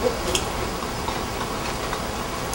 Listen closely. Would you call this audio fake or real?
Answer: real